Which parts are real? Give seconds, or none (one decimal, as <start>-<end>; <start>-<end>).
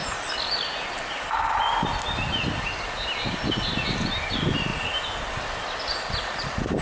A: 0.0-6.8